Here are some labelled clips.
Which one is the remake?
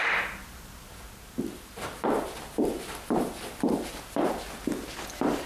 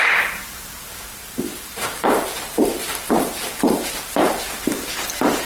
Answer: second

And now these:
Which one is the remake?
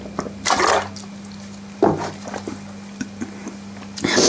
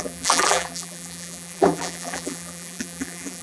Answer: second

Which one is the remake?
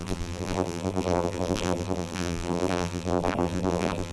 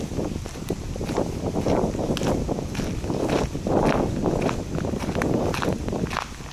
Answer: first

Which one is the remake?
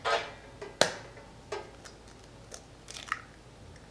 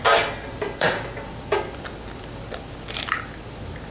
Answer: second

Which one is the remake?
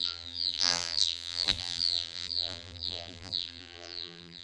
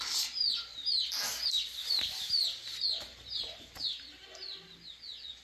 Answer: first